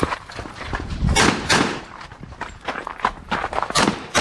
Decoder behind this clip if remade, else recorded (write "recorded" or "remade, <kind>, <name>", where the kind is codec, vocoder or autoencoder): remade, vocoder, BigVGAN v2